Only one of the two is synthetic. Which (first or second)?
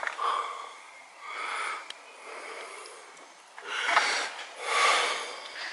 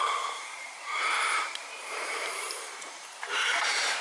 second